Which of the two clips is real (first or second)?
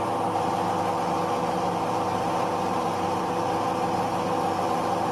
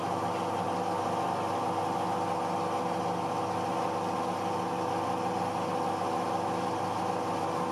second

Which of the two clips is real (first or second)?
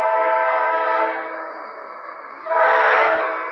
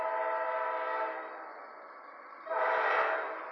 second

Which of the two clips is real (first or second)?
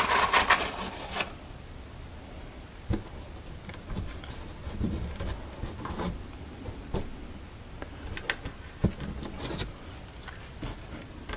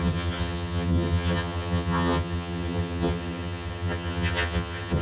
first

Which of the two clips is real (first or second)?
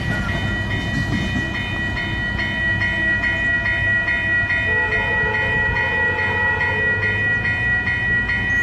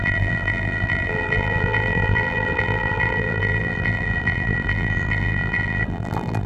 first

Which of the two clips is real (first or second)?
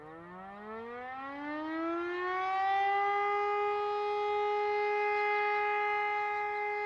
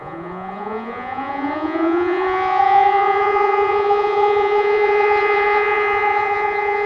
first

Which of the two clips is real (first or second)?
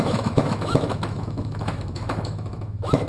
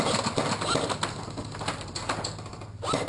second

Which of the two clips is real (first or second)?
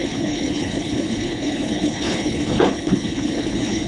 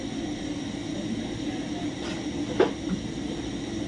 second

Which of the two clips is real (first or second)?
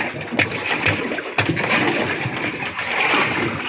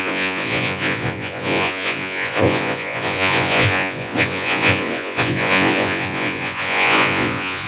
first